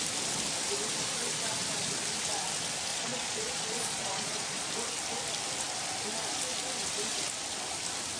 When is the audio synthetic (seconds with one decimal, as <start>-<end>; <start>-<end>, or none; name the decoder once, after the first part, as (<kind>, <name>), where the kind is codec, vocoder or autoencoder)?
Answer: 2.9-4.7 (vocoder, Vocos)